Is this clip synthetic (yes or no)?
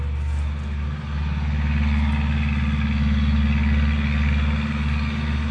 no